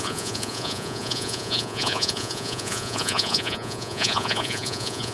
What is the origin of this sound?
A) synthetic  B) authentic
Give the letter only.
A